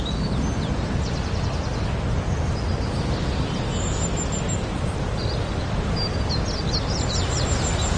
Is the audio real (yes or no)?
yes